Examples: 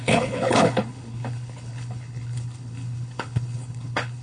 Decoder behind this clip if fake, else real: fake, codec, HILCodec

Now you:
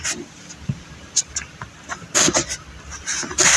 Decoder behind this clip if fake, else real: real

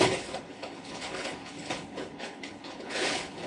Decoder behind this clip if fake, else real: fake, codec, HILCodec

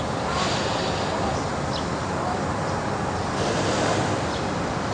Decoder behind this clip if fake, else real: real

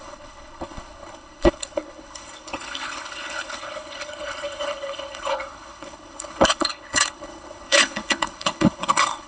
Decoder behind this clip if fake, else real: fake, codec, HILCodec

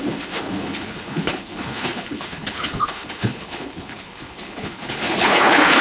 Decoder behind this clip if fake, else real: fake, codec, HILCodec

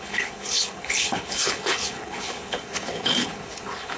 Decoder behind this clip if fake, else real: fake, codec, HILCodec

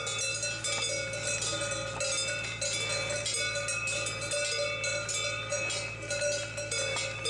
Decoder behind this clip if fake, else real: real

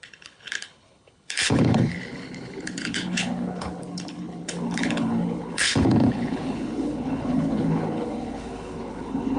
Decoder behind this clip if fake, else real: fake, codec, HILCodec